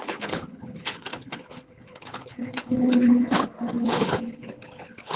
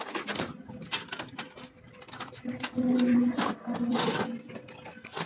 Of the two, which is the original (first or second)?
second